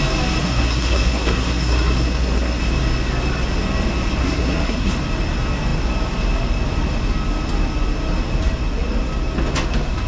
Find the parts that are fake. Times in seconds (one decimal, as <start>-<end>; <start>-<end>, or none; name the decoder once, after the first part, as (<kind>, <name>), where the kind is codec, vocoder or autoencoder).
0.4-2.6 (codec, SNAC); 4.2-4.9